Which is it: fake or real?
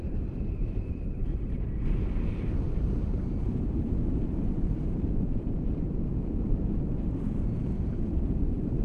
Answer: fake